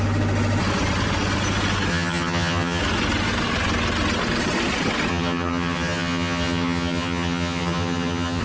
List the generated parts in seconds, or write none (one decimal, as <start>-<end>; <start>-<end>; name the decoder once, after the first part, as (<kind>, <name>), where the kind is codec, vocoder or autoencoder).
1.9-2.8 (vocoder, HiFi-GAN); 5.1-8.4